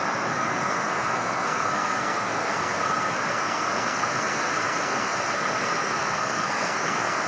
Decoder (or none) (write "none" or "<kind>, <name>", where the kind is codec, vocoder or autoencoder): codec, SNAC